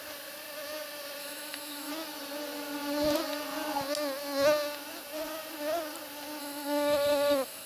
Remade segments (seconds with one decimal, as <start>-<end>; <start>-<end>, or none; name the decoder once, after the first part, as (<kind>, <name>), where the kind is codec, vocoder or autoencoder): 1.2-1.9 (autoencoder, DAC-VAE); 6.4-7.7